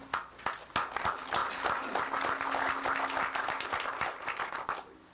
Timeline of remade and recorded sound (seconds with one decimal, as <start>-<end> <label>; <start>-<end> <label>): 0.0-5.1 recorded